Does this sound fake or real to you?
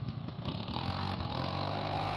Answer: fake